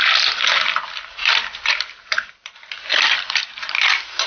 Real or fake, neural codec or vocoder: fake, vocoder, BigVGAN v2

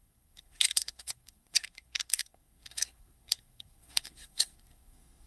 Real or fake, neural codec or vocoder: fake, codec, SNAC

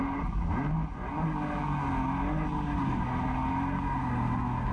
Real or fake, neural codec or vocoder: real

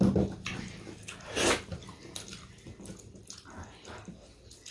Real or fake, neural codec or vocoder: real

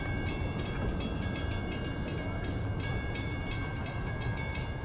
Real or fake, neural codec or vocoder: fake, vocoder, BigVGAN v2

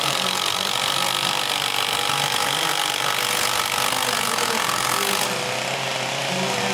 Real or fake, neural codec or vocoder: real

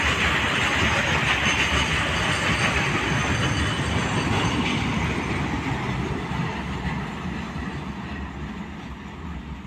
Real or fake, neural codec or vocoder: real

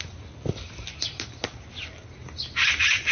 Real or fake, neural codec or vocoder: real